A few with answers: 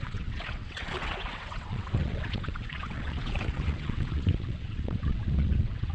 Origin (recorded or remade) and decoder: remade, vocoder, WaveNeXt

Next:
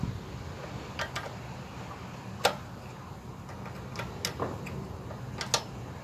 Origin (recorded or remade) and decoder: recorded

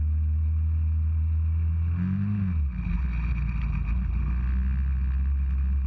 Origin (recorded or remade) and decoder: recorded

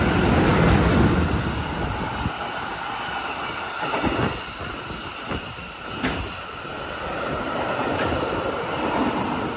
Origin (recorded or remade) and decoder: recorded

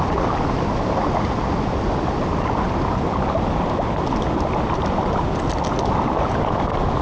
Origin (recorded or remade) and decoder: recorded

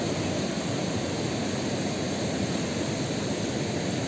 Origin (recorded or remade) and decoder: recorded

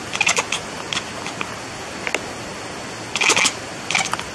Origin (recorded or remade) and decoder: recorded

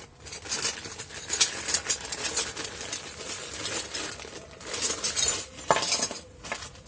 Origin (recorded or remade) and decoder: recorded